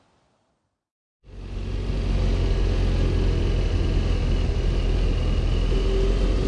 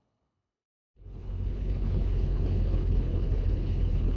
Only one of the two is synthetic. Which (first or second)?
second